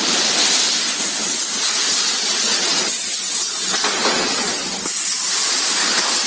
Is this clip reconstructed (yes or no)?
no